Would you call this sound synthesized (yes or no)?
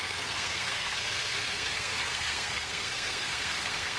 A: yes